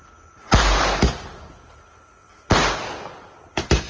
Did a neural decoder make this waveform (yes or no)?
no